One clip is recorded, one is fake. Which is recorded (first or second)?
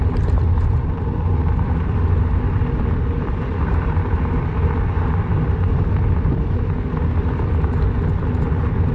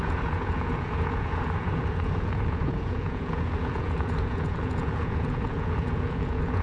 first